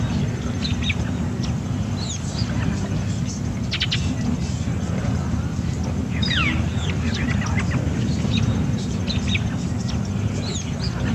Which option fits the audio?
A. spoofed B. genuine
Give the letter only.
B